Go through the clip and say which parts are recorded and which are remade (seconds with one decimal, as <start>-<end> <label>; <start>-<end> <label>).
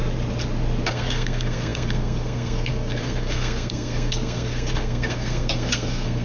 0.0-0.9 recorded; 0.9-6.2 remade